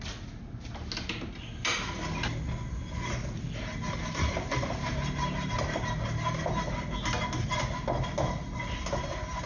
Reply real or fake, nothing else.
real